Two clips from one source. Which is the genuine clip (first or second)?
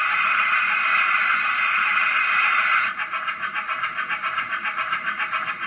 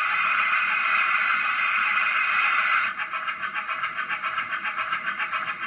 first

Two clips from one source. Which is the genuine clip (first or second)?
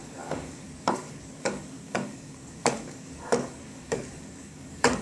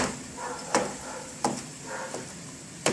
second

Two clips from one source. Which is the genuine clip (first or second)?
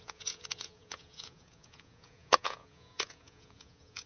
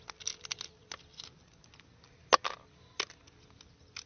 second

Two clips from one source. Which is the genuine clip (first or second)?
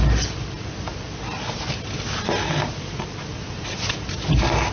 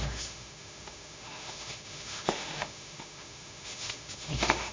first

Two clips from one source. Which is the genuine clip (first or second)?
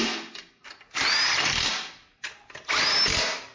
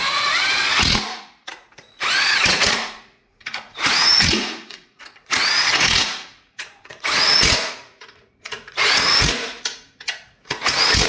first